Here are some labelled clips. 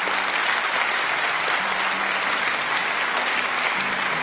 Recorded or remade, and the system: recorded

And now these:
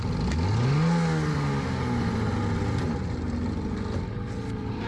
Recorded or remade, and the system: recorded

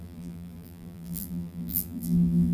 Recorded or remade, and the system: remade, vocoder, BigVGAN v2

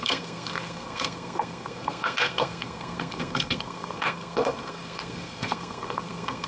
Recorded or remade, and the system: remade, codec, SNAC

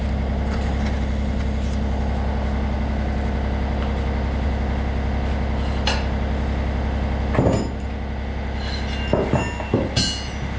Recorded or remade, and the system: recorded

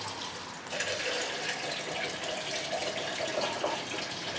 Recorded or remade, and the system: recorded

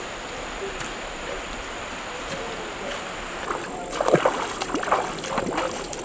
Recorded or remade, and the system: recorded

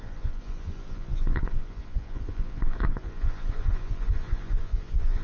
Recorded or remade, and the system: remade, vocoder, Vocos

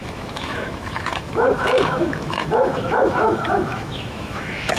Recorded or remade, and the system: remade, autoencoder, DAC-VAE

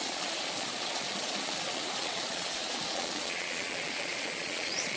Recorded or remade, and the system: remade, vocoder, Vocos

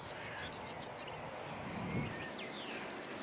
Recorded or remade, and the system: recorded